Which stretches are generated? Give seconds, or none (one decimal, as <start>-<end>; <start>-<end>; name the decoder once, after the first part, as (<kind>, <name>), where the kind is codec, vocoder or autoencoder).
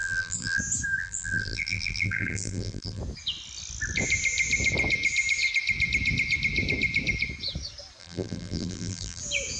0.0-0.6 (vocoder, BigVGAN v2); 1.0-3.0; 8.0-9.2